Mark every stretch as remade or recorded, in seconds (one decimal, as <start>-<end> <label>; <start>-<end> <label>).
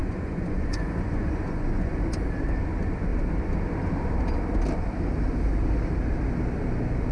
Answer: 0.0-1.9 remade; 1.9-7.1 recorded